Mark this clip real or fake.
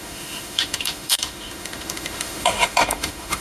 fake